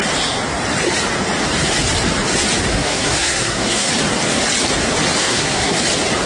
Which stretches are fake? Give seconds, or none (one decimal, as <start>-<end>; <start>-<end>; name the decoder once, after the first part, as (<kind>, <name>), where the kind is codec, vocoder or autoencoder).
2.7-3.9 (codec, SNAC); 5.2-5.8